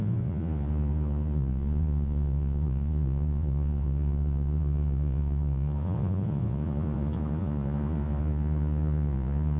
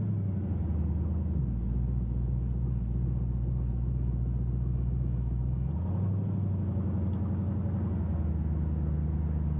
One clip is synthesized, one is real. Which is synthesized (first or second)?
first